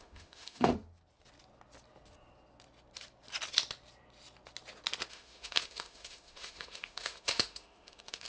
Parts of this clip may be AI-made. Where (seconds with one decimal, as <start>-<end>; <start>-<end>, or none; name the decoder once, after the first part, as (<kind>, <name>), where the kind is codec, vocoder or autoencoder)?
0.0-0.7 (autoencoder, DAC-VAE); 5.1-8.3